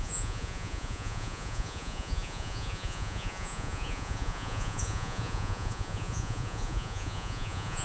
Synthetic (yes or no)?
yes